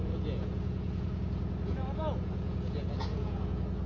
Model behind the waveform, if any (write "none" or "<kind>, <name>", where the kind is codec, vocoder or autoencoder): vocoder, Vocos